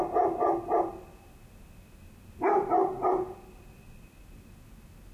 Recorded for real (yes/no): yes